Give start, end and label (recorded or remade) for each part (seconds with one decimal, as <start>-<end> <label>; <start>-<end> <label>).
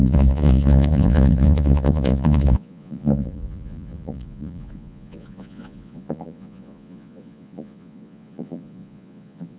0.0-9.6 remade